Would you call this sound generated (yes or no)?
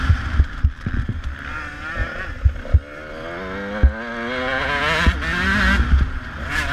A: no